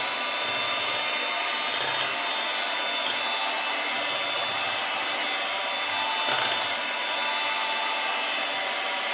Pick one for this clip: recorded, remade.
recorded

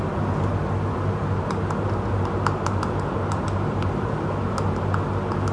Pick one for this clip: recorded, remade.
recorded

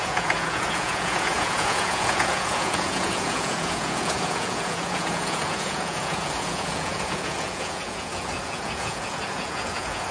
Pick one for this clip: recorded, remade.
remade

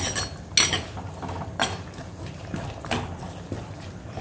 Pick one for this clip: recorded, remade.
recorded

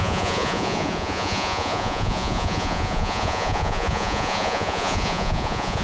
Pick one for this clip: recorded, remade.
remade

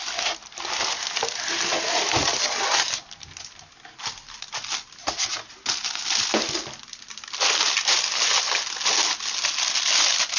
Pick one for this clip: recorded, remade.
recorded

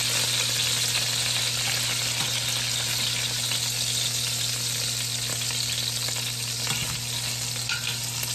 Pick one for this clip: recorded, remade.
recorded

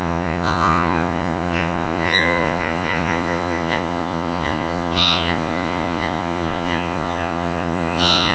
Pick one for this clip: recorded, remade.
remade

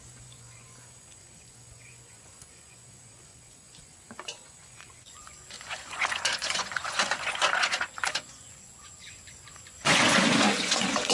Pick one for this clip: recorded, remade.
remade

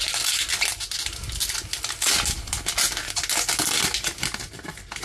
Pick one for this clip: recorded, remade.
recorded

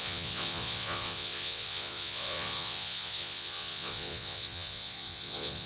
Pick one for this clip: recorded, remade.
remade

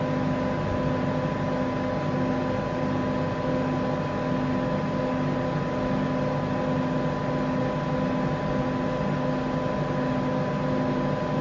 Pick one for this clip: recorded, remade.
recorded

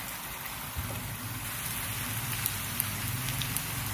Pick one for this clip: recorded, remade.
recorded